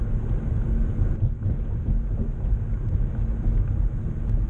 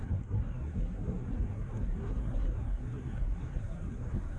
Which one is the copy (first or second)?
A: second